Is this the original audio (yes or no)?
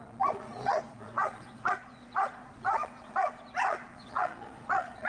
no